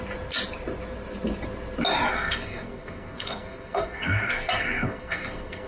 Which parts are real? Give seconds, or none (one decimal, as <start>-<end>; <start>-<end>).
0.0-2.1